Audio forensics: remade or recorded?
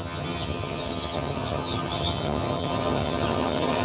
remade